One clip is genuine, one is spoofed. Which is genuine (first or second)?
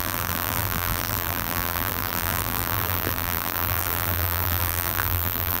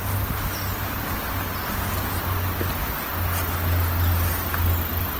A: second